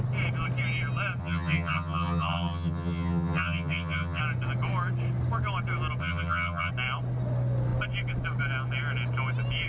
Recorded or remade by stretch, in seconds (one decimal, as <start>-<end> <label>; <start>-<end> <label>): 0.0-1.2 recorded; 1.2-4.2 remade; 4.2-6.0 recorded; 6.0-6.7 remade; 6.7-9.7 recorded